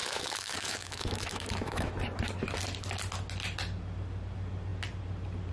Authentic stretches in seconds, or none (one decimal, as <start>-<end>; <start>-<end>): 1.9-5.5